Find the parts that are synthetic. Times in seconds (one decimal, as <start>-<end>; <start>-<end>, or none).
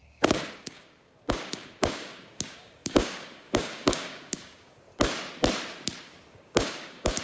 0.0-4.9; 6.3-7.2